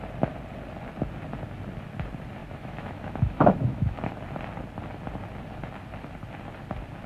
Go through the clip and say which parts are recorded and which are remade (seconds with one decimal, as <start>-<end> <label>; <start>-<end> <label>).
0.0-2.4 recorded; 2.4-4.0 remade; 4.0-7.1 recorded